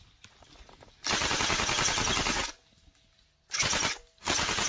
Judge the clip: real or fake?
real